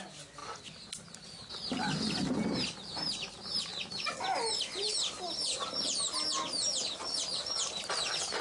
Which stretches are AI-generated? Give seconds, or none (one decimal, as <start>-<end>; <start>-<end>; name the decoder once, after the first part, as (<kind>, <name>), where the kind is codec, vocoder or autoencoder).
none